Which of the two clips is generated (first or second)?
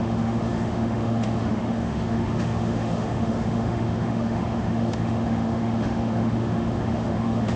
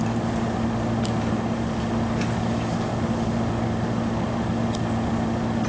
first